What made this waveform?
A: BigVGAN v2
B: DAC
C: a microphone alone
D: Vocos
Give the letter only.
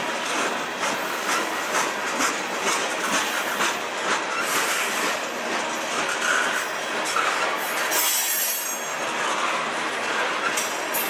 C